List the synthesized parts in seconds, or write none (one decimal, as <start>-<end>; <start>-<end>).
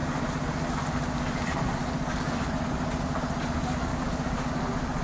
3.9-4.5